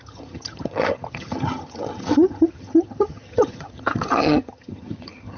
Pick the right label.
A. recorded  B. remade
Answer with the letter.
B